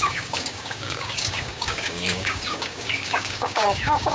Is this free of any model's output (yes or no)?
no